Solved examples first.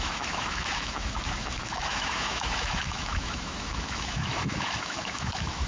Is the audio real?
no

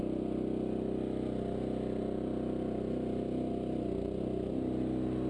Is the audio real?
yes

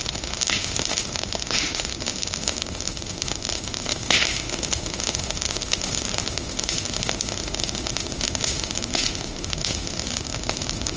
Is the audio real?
no